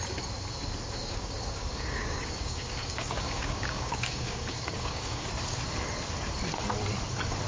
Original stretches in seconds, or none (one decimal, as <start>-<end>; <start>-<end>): 0.0-1.0; 5.3-7.5